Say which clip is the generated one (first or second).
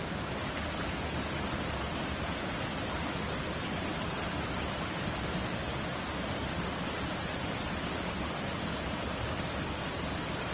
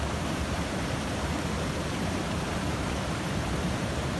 second